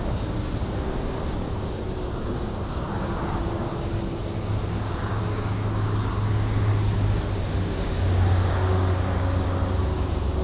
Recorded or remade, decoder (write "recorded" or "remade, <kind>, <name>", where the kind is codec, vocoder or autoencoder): remade, codec, DAC